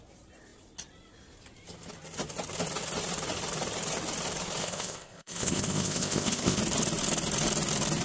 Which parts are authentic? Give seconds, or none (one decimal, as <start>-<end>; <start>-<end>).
0.0-4.6; 6.6-8.0